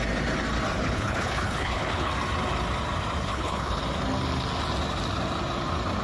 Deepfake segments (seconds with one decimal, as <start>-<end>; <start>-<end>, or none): 0.8-2.1; 3.3-3.8